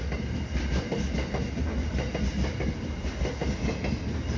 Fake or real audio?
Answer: real